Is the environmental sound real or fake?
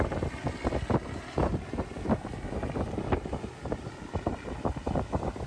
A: real